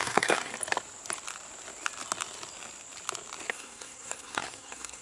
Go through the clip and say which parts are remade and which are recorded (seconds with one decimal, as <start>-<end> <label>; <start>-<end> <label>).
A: 0.0-0.5 remade; 0.5-3.5 recorded; 3.5-5.0 remade